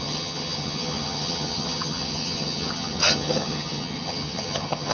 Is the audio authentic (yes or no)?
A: no